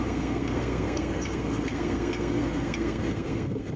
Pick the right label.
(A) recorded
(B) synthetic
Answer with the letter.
B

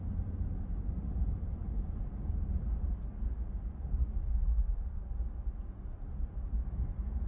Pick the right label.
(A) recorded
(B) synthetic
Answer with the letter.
A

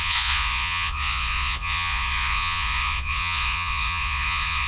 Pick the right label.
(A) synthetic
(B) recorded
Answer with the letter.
A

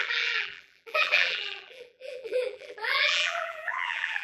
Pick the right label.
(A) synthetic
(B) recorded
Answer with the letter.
A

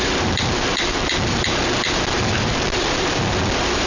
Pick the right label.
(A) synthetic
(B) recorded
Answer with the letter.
A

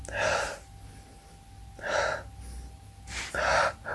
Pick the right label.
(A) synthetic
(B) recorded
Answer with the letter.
B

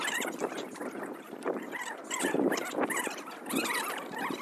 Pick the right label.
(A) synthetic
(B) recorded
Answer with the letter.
A